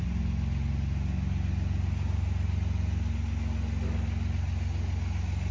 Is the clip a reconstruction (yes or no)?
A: no